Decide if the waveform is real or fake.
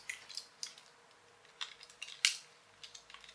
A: real